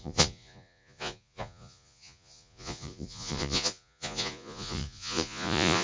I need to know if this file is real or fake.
fake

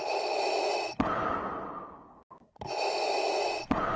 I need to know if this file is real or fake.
real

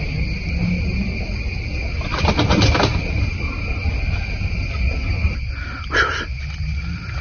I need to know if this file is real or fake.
real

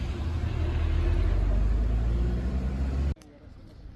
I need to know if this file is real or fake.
real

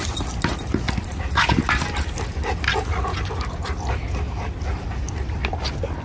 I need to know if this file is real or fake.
real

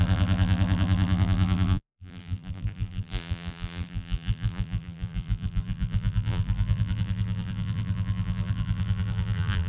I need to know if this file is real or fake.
fake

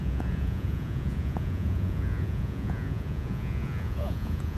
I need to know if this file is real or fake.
fake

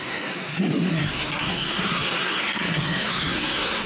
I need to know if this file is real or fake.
fake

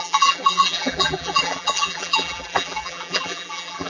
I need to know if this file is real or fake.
fake